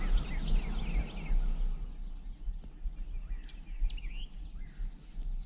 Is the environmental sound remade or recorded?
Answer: recorded